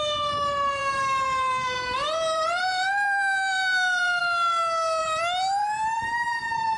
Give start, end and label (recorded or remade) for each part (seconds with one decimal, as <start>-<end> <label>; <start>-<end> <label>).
0.0-0.8 recorded; 0.8-4.2 remade; 4.2-5.0 recorded; 5.0-6.8 remade